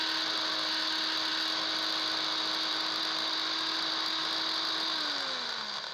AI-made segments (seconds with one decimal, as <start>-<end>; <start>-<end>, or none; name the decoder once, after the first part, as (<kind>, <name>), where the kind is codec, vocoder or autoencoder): none